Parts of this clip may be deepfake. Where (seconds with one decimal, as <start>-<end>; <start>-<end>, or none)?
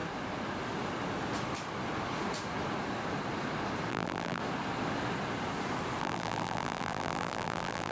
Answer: 3.9-4.4; 6.0-7.9